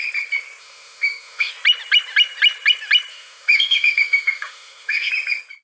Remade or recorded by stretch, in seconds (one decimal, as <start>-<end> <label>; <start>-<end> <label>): 0.0-0.6 recorded; 0.6-1.5 remade; 1.5-3.1 recorded; 3.1-5.1 remade; 5.1-5.6 recorded